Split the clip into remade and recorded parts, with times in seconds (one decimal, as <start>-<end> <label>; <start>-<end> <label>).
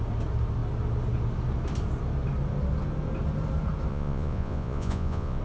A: 0.0-3.9 recorded; 3.9-5.4 remade